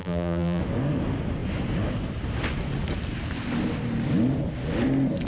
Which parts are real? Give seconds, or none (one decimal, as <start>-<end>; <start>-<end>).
0.6-5.3